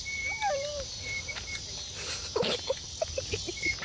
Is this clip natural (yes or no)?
yes